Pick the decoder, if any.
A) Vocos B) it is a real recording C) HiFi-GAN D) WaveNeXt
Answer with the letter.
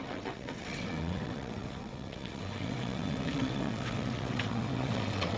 D